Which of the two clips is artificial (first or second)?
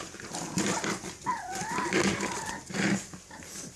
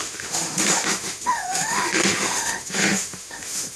second